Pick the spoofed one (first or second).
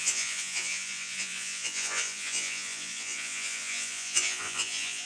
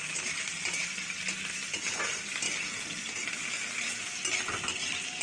first